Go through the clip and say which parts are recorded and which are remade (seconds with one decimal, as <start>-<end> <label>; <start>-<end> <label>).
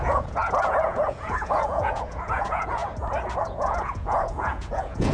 0.0-2.8 remade; 2.8-3.4 recorded; 3.4-5.1 remade